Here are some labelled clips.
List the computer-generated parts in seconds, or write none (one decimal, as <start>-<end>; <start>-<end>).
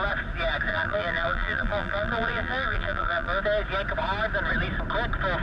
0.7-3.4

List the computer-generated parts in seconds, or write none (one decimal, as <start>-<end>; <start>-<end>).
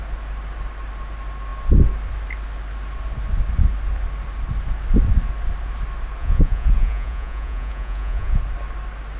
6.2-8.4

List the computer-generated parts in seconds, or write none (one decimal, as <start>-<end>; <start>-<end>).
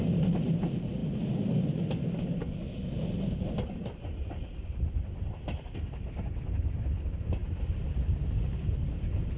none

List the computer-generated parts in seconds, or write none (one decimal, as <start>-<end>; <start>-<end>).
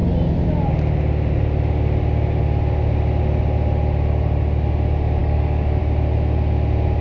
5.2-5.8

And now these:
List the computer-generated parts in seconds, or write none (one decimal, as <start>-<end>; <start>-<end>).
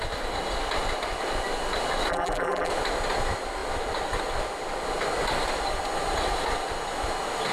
2.1-2.7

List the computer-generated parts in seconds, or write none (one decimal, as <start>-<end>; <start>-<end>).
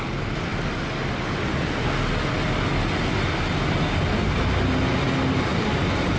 none